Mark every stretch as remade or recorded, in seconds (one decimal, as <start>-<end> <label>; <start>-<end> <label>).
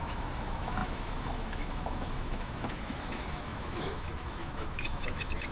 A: 0.0-5.5 remade